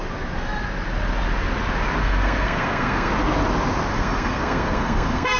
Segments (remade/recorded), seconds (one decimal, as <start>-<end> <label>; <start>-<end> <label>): 0.0-2.0 recorded; 2.0-3.1 remade; 3.1-3.9 recorded; 3.9-5.4 remade